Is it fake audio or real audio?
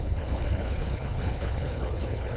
fake